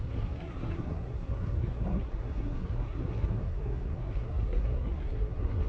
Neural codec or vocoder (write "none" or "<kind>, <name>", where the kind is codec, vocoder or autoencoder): codec, SNAC